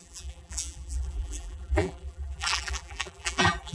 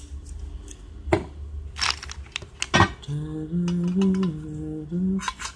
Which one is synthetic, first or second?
first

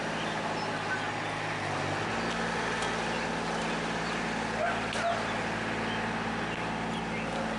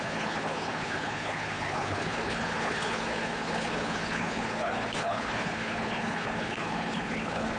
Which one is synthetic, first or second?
second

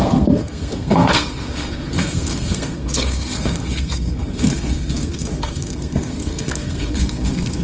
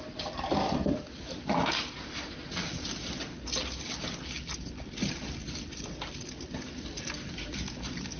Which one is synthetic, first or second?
first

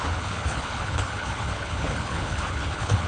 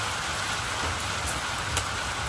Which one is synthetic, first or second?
first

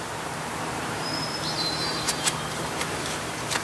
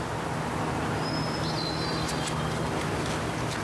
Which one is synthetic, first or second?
first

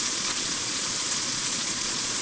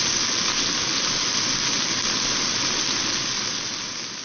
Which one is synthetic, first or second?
first